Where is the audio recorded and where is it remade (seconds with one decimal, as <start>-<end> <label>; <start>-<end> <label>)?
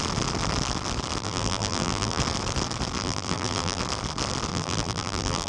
0.0-1.2 recorded; 1.2-2.2 remade; 2.2-3.0 recorded; 3.0-3.8 remade; 3.8-4.5 recorded; 4.5-5.5 remade